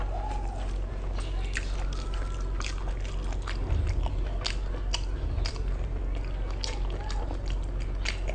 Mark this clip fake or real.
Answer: real